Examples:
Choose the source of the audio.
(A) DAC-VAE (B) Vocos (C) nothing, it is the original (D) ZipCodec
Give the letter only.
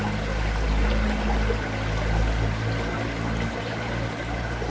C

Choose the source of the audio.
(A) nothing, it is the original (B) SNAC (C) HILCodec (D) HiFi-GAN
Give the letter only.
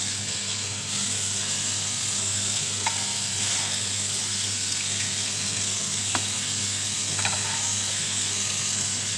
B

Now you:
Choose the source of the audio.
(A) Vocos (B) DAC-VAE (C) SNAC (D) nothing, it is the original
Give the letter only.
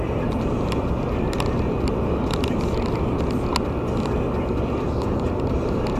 D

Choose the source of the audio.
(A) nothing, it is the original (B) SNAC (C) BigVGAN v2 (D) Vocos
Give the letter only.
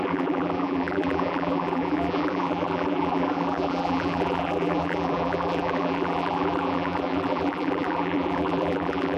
C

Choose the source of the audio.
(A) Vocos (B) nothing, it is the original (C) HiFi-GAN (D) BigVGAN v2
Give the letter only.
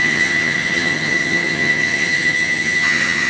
C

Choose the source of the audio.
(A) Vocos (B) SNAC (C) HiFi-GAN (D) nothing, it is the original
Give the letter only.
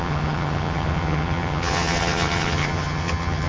C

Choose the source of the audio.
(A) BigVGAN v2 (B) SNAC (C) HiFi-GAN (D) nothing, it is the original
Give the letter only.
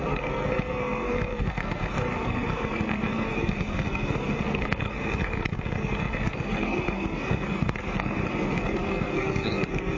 B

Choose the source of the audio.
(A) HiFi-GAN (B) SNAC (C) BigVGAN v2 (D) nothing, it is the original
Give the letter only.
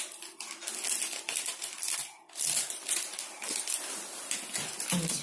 D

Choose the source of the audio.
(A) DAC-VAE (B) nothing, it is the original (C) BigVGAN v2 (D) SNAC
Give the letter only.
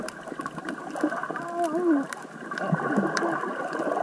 B